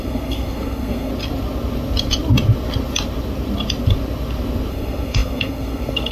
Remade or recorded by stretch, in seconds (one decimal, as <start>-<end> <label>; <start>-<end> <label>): 0.0-1.1 remade; 1.1-4.7 recorded; 4.7-6.1 remade